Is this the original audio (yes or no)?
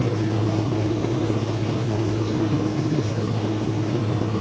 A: no